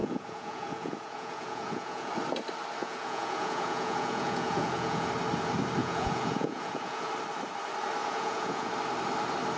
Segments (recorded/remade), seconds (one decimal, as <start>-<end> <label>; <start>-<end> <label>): 0.0-2.1 remade; 2.1-2.8 recorded; 2.8-5.1 remade; 5.1-5.8 recorded; 5.8-7.1 remade; 7.1-8.0 recorded; 8.0-8.7 remade; 8.7-9.6 recorded